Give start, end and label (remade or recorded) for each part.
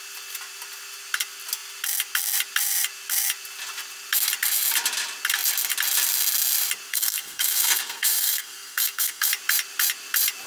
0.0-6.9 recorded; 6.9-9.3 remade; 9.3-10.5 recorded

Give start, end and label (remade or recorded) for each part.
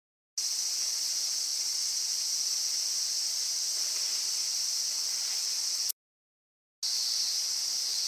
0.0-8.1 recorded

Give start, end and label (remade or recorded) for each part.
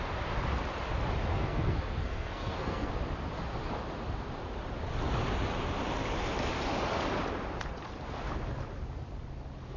0.0-1.3 recorded; 1.3-2.9 remade; 2.9-9.8 recorded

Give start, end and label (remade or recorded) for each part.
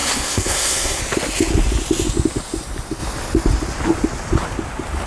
0.0-1.0 remade; 1.0-5.1 recorded